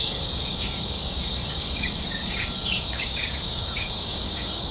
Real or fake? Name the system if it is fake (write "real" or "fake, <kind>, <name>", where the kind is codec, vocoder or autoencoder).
fake, codec, DAC